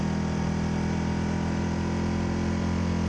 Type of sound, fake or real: fake